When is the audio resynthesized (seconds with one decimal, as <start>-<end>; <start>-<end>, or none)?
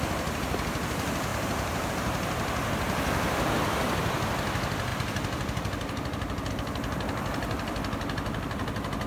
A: 1.3-1.9